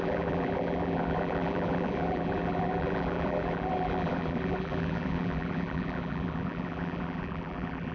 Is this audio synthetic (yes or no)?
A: yes